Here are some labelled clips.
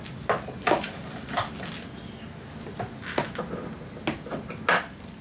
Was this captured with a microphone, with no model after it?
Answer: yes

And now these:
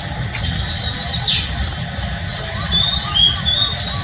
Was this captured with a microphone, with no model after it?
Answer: yes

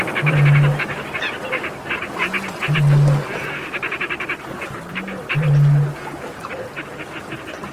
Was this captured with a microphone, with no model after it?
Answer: yes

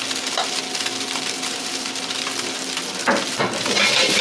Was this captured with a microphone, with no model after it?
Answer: yes